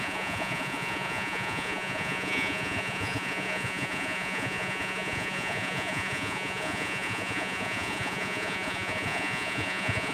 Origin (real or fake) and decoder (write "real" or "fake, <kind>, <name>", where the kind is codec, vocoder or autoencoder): fake, vocoder, Vocos